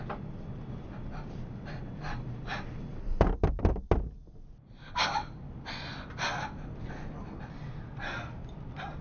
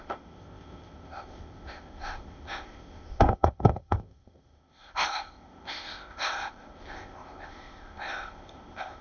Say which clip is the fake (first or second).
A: second